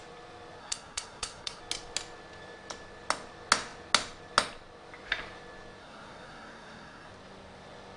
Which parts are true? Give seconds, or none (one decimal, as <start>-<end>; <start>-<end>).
0.0-0.6; 1.6-5.8; 7.1-8.0